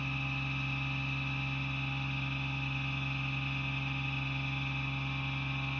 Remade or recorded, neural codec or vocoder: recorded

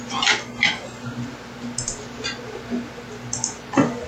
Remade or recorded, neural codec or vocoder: recorded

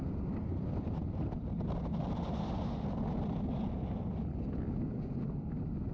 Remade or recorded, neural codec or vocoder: recorded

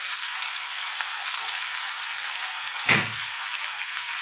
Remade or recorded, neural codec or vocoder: remade, codec, SNAC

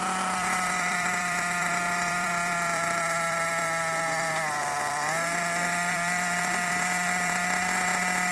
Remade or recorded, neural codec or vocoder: remade, vocoder, BigVGAN v2